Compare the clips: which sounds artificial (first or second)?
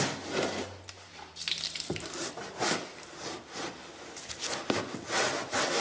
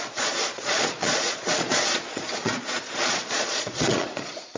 second